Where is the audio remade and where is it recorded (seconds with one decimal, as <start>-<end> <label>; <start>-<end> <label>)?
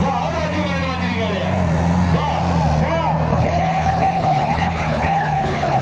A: 0.0-3.3 recorded; 3.3-5.8 remade